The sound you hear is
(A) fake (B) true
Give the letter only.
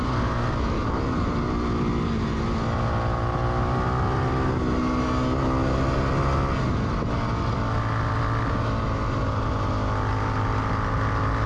B